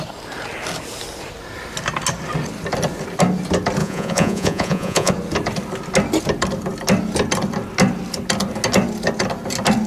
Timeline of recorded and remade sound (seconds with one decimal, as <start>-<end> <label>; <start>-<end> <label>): 0.0-3.8 recorded; 3.8-5.1 remade; 5.1-9.9 recorded